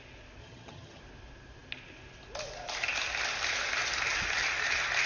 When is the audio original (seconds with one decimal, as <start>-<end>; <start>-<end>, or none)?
0.0-0.4; 1.0-5.1